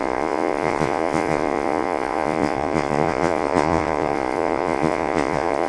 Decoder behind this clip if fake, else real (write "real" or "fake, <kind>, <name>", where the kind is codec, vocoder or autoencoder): fake, vocoder, Vocos